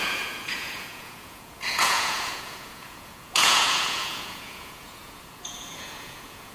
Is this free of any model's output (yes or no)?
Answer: no